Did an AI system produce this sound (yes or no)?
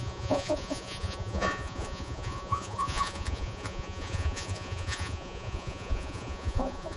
yes